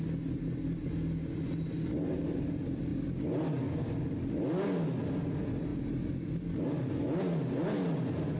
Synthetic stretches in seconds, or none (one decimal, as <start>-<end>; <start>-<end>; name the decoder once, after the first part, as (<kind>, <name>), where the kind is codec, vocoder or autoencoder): none